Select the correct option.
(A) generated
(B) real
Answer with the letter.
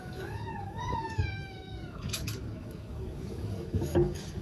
A